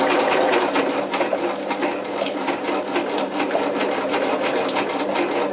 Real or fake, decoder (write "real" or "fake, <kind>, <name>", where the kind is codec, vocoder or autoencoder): real